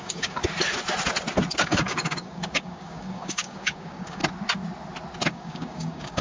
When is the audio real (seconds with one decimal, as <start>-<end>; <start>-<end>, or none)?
0.4-1.6; 4.2-5.3